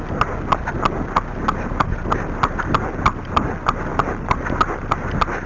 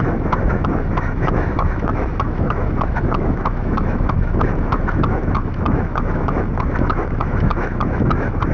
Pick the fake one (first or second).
second